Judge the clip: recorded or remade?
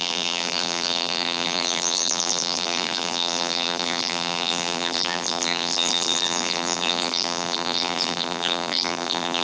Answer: remade